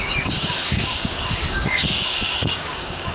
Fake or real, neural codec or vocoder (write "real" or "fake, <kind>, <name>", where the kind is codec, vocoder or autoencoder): fake, codec, DAC